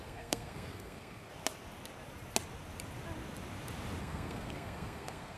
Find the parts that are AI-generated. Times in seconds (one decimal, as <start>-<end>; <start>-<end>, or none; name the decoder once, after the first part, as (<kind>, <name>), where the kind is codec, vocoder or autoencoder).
0.0-1.3 (codec, SNAC); 4.0-5.4